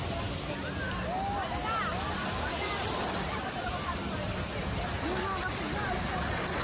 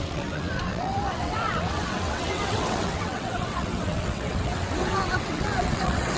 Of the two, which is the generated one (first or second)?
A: second